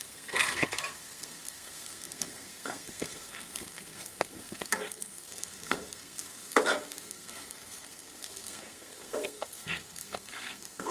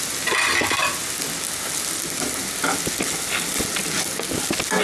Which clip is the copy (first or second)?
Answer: first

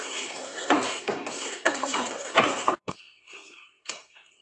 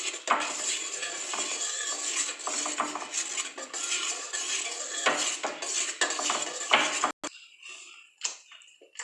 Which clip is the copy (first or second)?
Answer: first